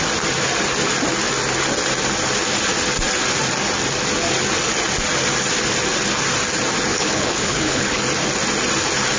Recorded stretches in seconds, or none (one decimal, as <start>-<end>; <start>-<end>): 0.0-6.9; 8.0-9.2